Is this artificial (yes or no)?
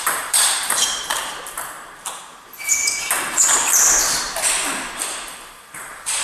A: yes